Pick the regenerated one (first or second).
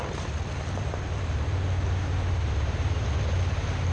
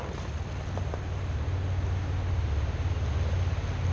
first